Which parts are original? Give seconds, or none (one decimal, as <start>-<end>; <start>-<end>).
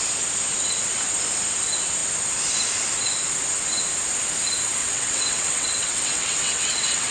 0.0-4.8